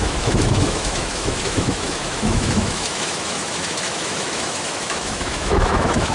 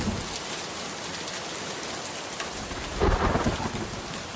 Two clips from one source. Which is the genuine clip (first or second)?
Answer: second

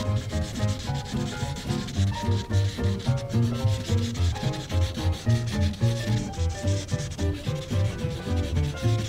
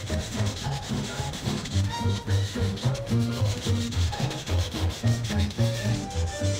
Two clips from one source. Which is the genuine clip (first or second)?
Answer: first